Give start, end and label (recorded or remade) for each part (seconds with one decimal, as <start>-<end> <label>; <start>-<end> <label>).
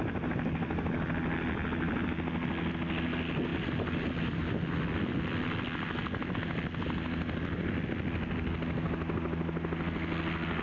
0.0-3.5 recorded; 3.5-6.3 remade; 6.3-10.6 recorded